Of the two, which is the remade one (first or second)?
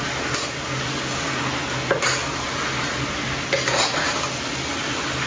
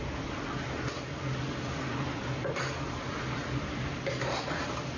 second